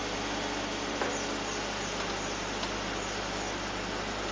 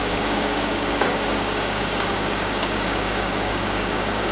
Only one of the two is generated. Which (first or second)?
second